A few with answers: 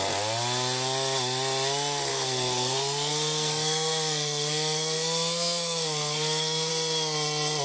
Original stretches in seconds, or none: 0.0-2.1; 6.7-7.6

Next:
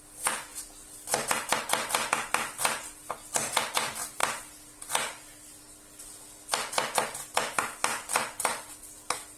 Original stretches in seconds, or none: 0.0-9.4

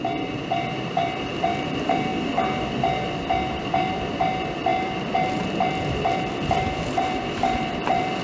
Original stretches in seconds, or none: 2.1-3.5